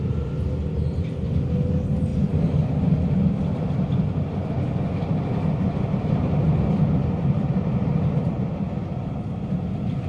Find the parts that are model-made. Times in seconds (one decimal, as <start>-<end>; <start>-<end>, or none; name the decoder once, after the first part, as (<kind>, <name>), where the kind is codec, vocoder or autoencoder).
none